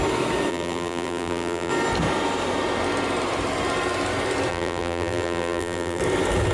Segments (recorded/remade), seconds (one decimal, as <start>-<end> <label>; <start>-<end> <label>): 0.0-0.5 recorded; 0.5-1.7 remade; 1.7-4.5 recorded; 4.5-6.0 remade; 6.0-6.5 recorded

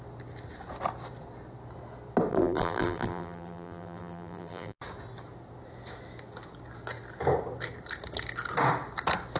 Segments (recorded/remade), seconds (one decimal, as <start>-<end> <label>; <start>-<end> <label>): 0.0-2.3 recorded; 2.3-4.8 remade; 4.8-9.4 recorded

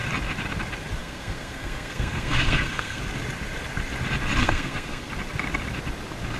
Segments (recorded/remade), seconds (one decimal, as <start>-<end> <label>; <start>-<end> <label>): 0.0-1.0 recorded; 1.0-3.0 remade; 3.0-4.4 recorded; 4.4-5.1 remade; 5.1-6.4 recorded

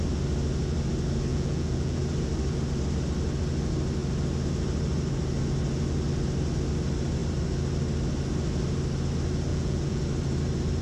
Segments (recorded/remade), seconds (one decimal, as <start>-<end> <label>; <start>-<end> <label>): 0.0-1.3 recorded; 1.3-2.0 remade; 2.0-9.5 recorded; 9.5-10.0 remade; 10.0-10.8 recorded

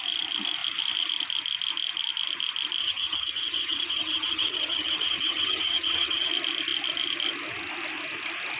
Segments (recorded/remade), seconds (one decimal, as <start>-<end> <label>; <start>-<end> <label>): 0.0-2.8 recorded; 2.8-6.3 remade; 6.3-8.6 recorded

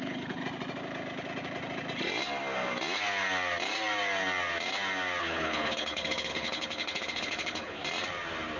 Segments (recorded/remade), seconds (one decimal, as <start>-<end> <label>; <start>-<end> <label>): 0.0-0.4 remade; 0.4-5.2 recorded; 5.2-7.8 remade; 7.8-8.6 recorded